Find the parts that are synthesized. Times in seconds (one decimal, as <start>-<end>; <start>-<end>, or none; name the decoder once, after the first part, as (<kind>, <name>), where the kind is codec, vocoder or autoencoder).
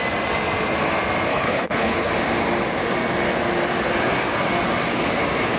1.3-2.1 (codec, HILCodec)